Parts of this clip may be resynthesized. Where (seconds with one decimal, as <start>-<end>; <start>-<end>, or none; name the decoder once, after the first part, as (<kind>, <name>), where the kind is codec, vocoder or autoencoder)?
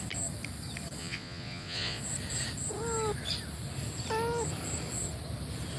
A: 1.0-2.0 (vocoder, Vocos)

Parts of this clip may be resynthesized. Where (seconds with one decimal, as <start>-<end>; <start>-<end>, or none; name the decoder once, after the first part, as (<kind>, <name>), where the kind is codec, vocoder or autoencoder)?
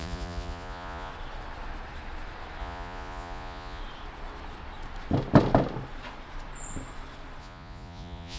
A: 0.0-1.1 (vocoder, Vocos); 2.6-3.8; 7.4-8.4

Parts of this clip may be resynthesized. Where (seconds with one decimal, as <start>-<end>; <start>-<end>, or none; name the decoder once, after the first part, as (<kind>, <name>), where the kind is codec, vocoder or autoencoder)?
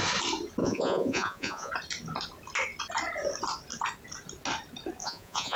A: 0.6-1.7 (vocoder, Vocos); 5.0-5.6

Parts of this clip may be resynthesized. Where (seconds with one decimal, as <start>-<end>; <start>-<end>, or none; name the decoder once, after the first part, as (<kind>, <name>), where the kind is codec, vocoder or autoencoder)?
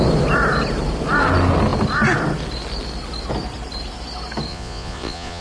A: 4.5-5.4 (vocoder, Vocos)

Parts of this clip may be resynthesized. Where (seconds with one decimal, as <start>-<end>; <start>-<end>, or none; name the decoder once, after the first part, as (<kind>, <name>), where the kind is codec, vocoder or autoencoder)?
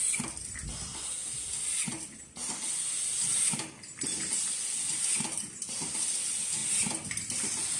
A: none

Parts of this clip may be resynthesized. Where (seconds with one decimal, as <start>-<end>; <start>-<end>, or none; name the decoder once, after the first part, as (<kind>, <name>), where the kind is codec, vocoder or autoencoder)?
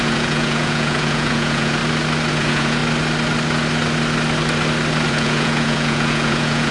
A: 0.0-1.8 (vocoder, Vocos); 2.3-2.8; 5.1-6.7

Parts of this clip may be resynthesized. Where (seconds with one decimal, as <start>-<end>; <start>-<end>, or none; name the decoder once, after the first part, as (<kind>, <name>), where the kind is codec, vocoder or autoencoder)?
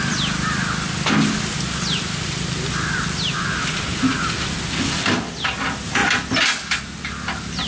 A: none